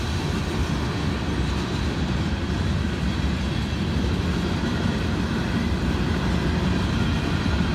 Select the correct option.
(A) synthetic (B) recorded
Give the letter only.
B